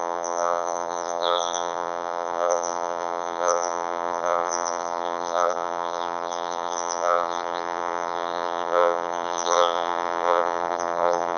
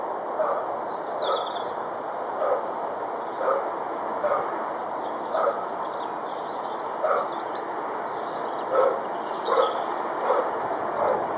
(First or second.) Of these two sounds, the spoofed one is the first